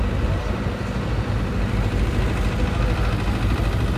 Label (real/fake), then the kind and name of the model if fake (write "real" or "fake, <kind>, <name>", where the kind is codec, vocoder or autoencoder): real